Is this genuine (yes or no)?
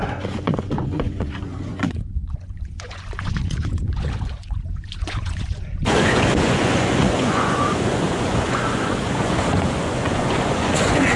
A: no